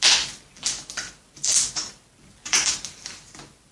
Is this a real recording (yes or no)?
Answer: yes